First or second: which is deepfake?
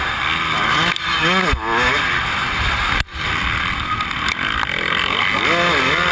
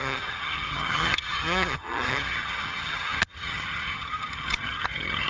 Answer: second